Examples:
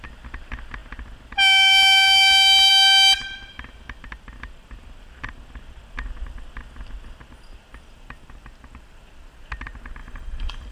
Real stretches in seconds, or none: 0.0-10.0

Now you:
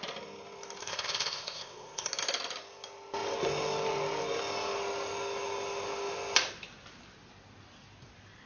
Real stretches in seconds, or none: 0.0-0.8; 2.1-8.5

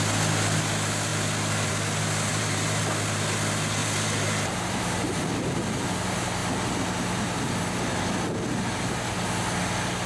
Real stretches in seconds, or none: 0.0-2.3; 2.8-3.8; 4.8-10.1

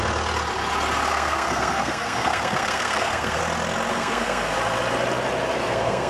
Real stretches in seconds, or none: 0.0-1.1; 3.4-3.9; 4.6-5.6

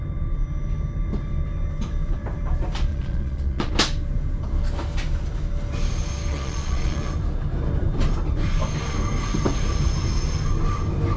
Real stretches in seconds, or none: 0.0-2.9; 3.7-6.3; 7.1-11.2

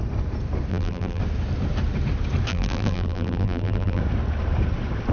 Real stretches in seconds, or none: 0.0-0.7; 1.2-2.5; 4.0-5.1

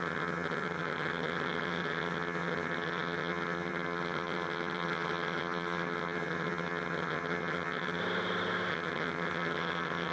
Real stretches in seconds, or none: 8.0-8.7